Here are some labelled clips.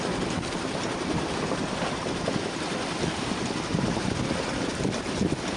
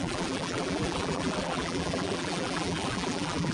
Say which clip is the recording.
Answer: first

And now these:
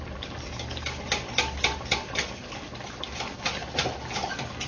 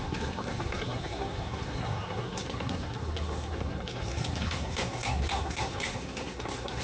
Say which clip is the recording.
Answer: first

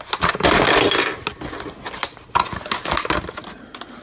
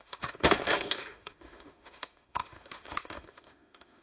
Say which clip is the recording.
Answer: first